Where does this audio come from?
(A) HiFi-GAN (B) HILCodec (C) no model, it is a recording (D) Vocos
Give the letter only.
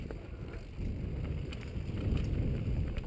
C